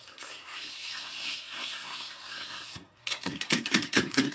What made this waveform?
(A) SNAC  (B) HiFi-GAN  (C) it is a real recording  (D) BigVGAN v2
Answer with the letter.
A